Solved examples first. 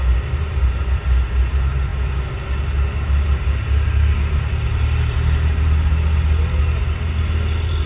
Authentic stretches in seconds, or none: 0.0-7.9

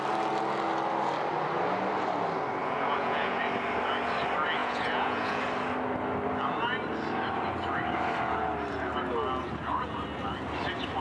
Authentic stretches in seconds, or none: 0.0-2.6; 3.4-4.6; 5.4-11.0

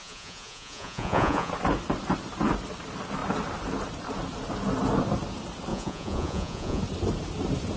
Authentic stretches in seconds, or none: 1.5-5.7; 6.8-7.8

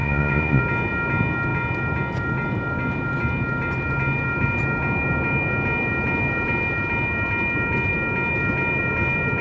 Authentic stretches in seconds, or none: 0.6-9.4